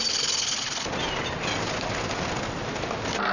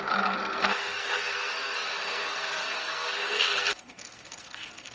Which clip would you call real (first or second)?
first